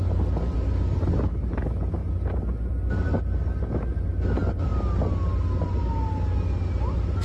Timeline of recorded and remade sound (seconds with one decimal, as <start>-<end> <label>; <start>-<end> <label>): 0.0-7.2 recorded